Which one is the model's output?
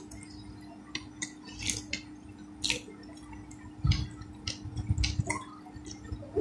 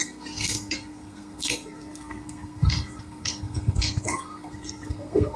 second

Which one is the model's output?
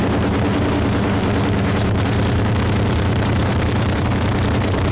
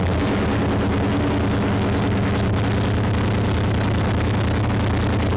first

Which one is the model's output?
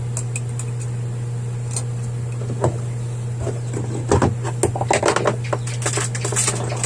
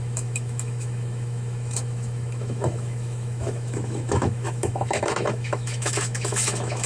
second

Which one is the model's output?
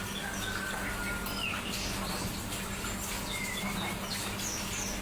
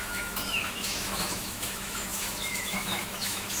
second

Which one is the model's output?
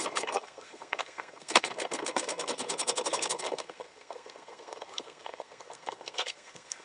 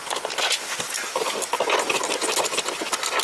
first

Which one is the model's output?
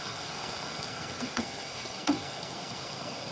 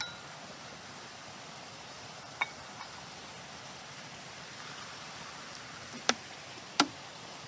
first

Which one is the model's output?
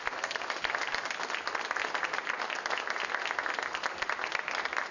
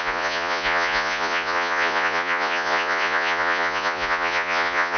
second